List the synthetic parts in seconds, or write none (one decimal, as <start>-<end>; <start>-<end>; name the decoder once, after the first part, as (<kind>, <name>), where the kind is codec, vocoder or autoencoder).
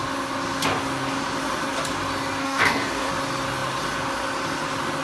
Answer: 2.4-3.1 (codec, DAC)